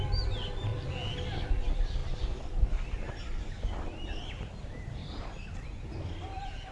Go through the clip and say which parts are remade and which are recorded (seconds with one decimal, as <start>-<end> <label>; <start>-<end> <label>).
0.0-6.7 recorded